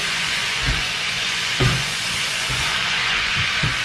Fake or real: fake